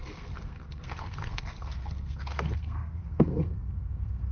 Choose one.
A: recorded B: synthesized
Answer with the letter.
B